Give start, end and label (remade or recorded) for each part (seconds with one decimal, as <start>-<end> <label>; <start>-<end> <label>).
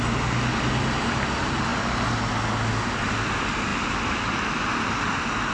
0.0-5.5 recorded